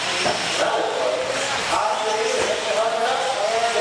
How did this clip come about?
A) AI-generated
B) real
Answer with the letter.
B